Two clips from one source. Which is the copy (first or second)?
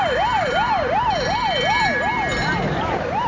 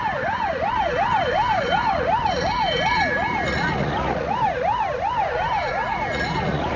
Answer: second